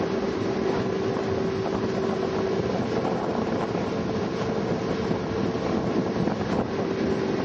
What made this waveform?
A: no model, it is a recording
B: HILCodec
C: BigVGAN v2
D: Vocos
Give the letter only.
A